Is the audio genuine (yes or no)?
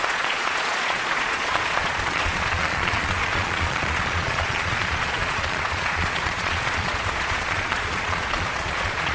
no